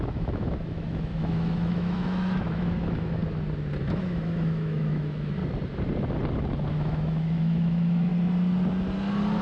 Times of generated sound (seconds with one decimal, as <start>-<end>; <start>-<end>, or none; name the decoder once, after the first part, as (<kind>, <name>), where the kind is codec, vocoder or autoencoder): 0.0-3.2 (autoencoder, DAC-VAE); 3.8-5.4; 6.7-8.1